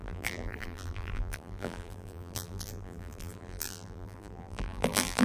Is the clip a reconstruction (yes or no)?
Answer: yes